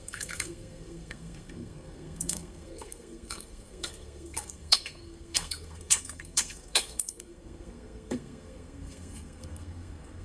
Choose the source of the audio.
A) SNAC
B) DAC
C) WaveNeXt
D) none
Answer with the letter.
A